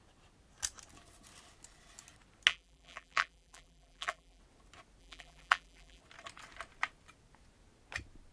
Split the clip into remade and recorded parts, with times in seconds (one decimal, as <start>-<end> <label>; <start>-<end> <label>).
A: 0.0-2.5 recorded; 2.5-4.4 remade; 4.4-5.0 recorded; 5.0-6.0 remade; 6.0-8.3 recorded